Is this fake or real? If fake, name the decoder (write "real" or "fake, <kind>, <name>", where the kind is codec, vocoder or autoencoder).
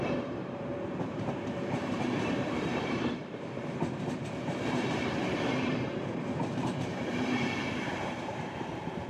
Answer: fake, vocoder, BigVGAN v2